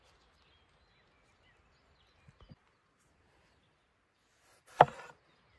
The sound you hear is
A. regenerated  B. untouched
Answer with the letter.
B